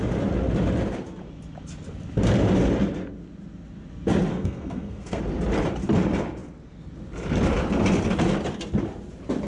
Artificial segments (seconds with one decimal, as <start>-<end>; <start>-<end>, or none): 4.3-5.2